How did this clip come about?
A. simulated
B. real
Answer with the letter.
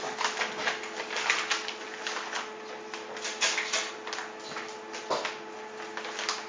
B